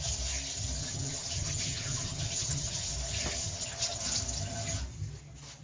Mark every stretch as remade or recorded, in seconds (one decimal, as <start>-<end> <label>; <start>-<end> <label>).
0.0-0.8 recorded; 0.8-2.9 remade; 2.9-3.4 recorded; 3.4-4.0 remade; 4.0-5.6 recorded